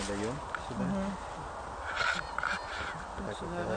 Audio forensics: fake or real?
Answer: real